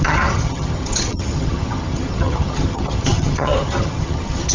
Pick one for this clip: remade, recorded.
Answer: remade